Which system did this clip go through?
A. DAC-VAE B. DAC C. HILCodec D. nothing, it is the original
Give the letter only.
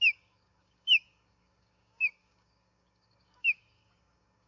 B